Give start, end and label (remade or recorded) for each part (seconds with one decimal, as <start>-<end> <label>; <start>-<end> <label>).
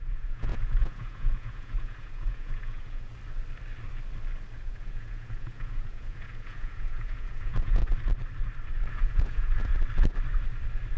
0.0-3.1 remade; 3.1-4.6 recorded; 4.6-7.8 remade; 7.8-8.9 recorded; 8.9-9.7 remade; 9.7-11.0 recorded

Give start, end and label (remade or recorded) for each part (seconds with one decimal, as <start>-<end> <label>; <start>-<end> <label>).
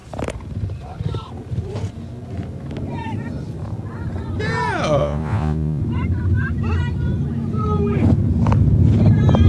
0.0-5.0 recorded; 5.0-5.8 remade; 5.8-9.5 recorded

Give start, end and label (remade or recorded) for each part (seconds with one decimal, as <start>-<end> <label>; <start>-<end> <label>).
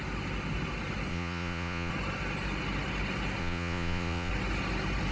0.0-1.1 recorded; 1.1-1.9 remade; 1.9-3.4 recorded; 3.4-4.3 remade; 4.3-5.1 recorded